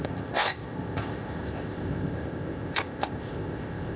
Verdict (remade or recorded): remade